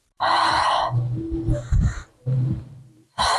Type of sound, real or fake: fake